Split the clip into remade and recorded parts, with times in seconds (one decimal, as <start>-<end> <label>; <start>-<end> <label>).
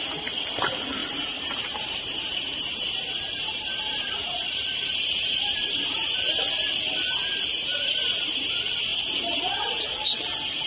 0.0-1.0 recorded; 1.0-6.2 remade; 6.2-7.5 recorded; 7.5-8.5 remade; 8.5-8.9 recorded; 8.9-9.7 remade; 9.7-10.7 recorded